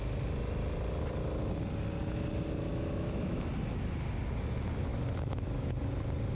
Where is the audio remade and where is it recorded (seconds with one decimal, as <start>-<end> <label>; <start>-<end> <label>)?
0.0-2.7 recorded; 2.7-3.5 remade; 3.5-4.9 recorded; 4.9-5.7 remade; 5.7-6.3 recorded